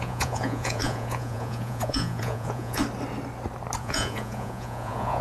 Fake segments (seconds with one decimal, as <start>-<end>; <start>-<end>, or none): 0.0-2.8; 3.8-5.2